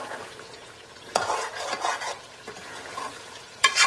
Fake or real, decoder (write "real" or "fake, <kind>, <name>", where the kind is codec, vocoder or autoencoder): fake, vocoder, Vocos